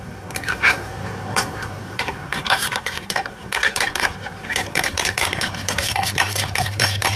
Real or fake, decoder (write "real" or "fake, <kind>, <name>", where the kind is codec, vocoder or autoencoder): fake, codec, SNAC